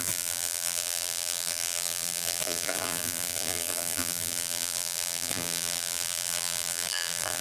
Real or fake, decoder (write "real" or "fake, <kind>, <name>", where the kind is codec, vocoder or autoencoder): fake, vocoder, BigVGAN v2